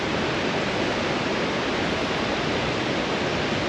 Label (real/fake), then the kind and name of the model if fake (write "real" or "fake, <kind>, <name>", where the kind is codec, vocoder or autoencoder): real